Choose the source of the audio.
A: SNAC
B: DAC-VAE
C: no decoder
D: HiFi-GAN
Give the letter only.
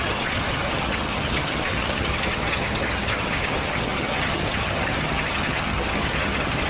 D